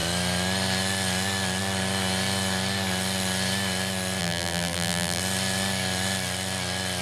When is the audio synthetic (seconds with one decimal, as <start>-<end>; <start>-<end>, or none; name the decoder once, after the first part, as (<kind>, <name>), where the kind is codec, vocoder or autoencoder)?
4.2-5.2 (vocoder, BigVGAN v2)